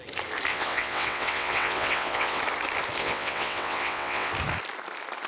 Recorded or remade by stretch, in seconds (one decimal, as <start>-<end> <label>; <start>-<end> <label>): 0.0-0.5 recorded; 0.5-2.4 remade; 2.4-3.0 recorded; 3.0-4.3 remade; 4.3-5.3 recorded